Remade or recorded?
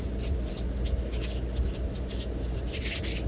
recorded